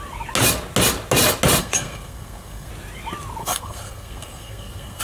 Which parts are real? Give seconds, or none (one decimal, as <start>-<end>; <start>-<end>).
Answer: 0.0-1.6; 2.7-3.4